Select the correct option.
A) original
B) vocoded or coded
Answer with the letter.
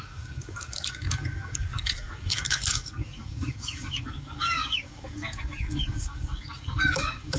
B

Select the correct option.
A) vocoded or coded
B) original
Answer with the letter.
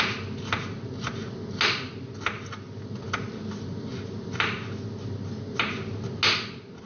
B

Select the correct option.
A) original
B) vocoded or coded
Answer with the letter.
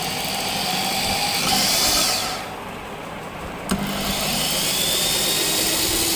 A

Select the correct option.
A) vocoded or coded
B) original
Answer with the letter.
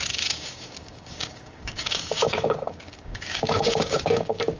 A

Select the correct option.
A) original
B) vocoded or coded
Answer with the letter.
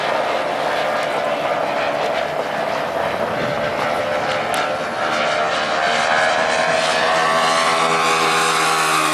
A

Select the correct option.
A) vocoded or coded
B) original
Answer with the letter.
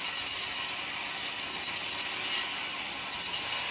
B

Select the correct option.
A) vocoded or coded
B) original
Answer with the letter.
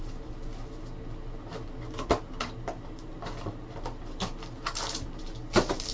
B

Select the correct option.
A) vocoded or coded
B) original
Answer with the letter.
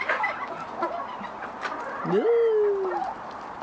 B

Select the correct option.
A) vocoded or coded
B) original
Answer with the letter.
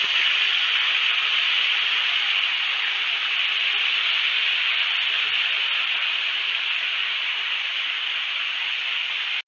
B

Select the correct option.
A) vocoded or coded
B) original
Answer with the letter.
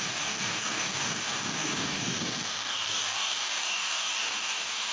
A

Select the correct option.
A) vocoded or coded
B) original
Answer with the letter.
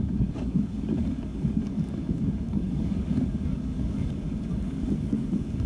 A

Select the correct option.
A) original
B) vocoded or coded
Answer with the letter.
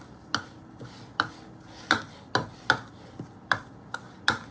A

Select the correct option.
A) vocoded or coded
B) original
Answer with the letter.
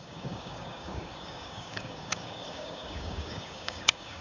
A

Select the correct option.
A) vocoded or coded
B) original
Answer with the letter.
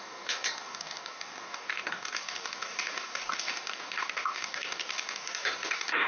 A